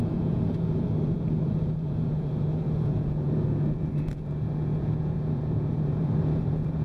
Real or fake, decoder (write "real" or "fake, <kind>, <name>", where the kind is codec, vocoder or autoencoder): fake, vocoder, Vocos